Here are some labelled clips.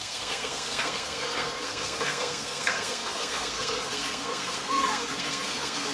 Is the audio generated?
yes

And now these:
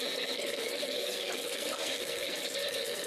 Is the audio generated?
yes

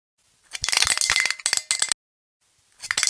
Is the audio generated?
no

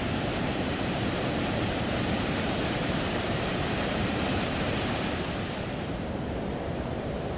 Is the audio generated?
yes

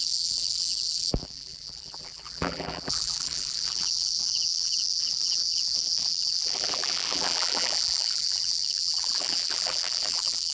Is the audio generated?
yes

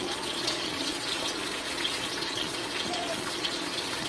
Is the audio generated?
yes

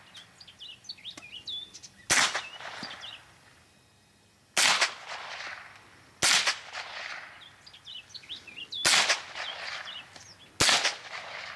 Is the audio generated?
no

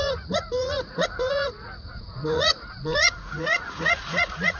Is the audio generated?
yes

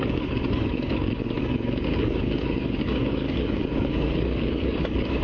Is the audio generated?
yes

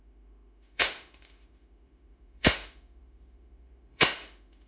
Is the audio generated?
yes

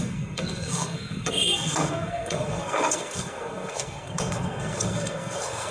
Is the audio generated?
yes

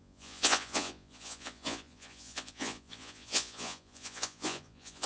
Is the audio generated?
yes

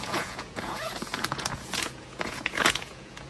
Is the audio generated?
yes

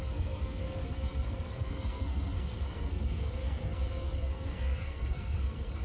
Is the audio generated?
yes